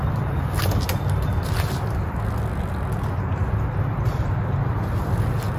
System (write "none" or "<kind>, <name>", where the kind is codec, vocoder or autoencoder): none